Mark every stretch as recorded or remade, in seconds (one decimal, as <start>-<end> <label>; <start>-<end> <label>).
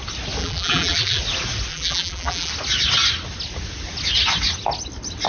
0.0-0.4 recorded; 0.4-1.2 remade; 1.2-1.7 recorded; 1.7-2.5 remade; 2.5-5.3 recorded